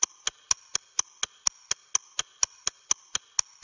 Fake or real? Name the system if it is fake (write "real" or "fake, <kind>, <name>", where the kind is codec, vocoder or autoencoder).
real